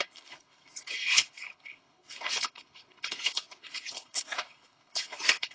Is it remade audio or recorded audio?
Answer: remade